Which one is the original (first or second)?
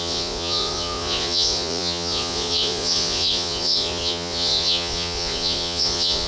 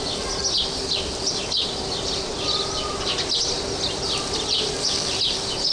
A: second